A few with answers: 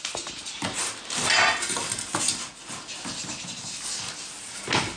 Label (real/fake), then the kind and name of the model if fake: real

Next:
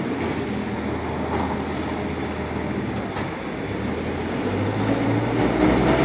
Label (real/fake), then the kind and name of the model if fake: real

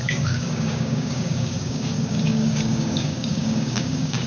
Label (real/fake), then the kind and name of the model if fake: fake, codec, DAC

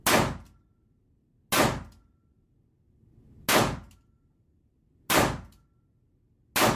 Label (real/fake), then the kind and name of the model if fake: real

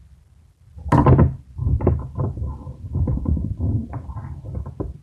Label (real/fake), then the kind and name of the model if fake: real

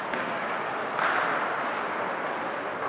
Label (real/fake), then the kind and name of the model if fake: real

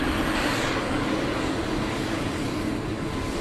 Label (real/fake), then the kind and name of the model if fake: fake, codec, DAC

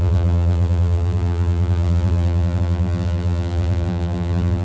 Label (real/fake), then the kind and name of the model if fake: fake, vocoder, BigVGAN v2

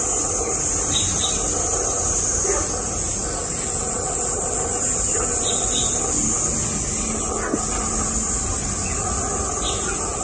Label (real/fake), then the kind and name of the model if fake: real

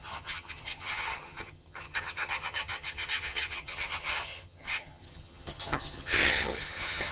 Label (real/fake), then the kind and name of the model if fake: fake, vocoder, HiFi-GAN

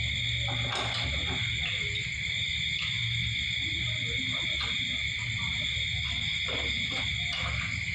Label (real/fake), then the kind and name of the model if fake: real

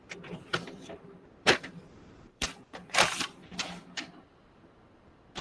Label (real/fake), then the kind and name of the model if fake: fake, vocoder, BigVGAN v2